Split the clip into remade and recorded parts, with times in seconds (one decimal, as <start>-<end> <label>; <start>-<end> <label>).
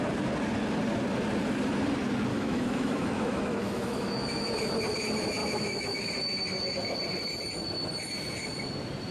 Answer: 0.0-2.3 recorded; 2.3-4.5 remade; 4.5-5.4 recorded; 5.4-6.1 remade; 6.1-9.1 recorded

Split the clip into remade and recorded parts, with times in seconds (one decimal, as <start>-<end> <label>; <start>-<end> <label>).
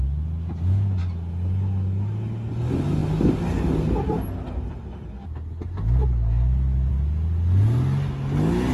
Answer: 0.0-8.7 recorded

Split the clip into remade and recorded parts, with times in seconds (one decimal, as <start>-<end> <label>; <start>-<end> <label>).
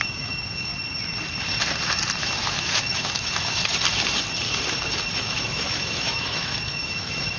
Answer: 0.0-0.7 remade; 0.7-2.2 recorded; 2.2-3.7 remade; 3.7-5.2 recorded; 5.2-7.4 remade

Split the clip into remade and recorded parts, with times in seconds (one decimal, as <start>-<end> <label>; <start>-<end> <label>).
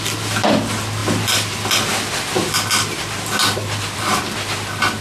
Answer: 0.0-5.0 recorded